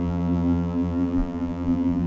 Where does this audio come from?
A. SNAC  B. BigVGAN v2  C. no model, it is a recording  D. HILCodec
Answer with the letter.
B